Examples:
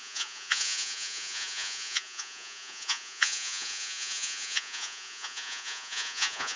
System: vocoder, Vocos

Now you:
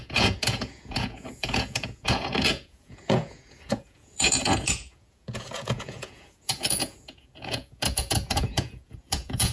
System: vocoder, Vocos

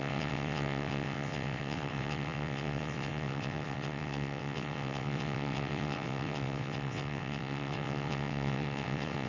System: vocoder, WaveNeXt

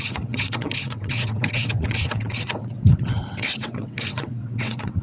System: vocoder, WaveNeXt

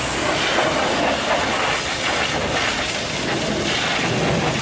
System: none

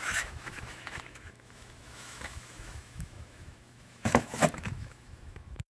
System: autoencoder, DAC-VAE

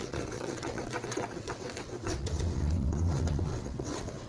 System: vocoder, WaveNeXt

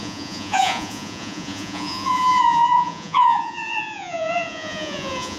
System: vocoder, Vocos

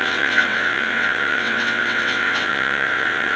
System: vocoder, WaveNeXt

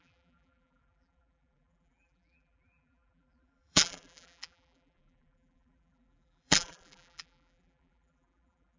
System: vocoder, BigVGAN v2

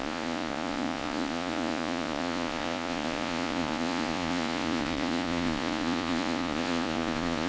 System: vocoder, Vocos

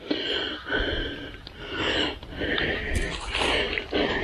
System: none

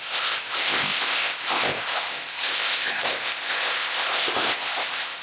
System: codec, ZipCodec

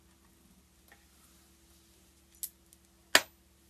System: none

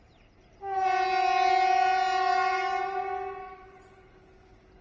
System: none